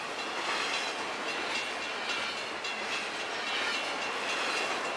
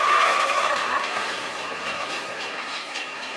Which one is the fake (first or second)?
second